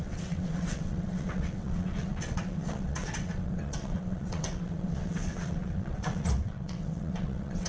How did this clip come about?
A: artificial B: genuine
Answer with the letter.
A